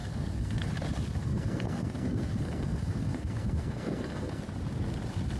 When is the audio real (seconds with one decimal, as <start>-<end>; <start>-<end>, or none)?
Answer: 0.7-1.2; 4.4-5.4